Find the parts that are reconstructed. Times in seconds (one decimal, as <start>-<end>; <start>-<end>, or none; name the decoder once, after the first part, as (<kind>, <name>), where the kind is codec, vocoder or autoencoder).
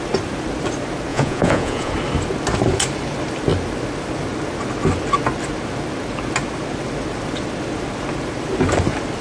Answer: 1.1-1.9 (vocoder, Vocos)